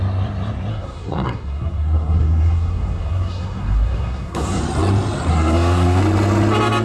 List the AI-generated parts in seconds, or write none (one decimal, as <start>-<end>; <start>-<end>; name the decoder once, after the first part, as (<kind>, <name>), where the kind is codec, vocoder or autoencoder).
0.7-4.6 (codec, SNAC); 5.3-6.0